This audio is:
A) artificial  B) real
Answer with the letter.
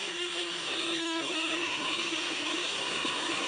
A